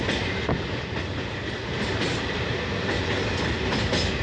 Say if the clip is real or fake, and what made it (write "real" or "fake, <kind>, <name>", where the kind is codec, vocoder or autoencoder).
real